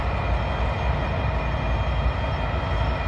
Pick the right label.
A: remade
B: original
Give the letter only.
B